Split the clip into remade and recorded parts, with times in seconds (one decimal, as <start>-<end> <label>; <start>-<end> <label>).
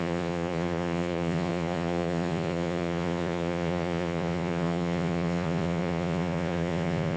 0.0-7.2 remade